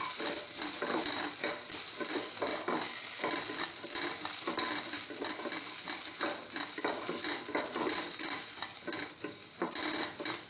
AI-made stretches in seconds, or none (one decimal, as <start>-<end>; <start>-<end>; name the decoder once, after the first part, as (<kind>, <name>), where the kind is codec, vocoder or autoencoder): 0.0-0.9 (vocoder, BigVGAN v2); 1.7-2.5; 7.6-10.5